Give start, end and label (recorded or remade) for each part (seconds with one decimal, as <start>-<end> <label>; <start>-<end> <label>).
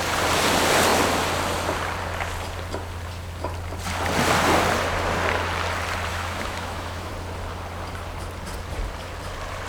0.0-6.1 recorded; 6.1-7.1 remade; 7.1-9.7 recorded